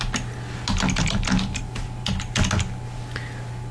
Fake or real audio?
real